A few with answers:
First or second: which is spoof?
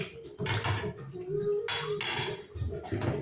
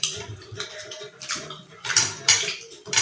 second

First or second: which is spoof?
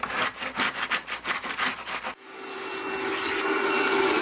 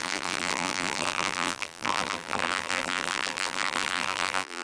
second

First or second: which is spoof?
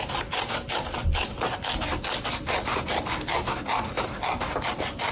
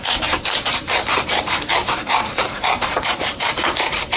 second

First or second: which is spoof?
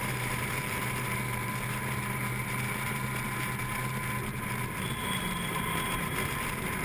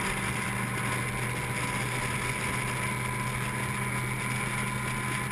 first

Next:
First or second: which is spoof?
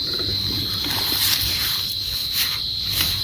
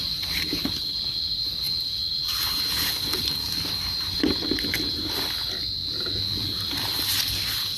first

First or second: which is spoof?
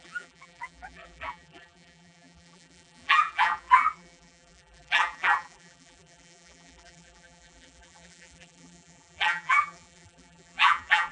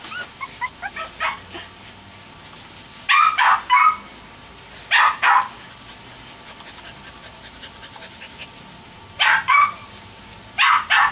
first